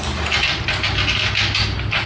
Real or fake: real